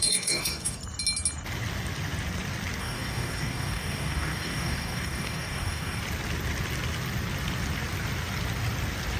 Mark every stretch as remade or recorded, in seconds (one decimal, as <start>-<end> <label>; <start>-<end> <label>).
0.0-0.8 remade; 0.8-2.8 recorded; 2.8-6.0 remade; 6.0-9.2 recorded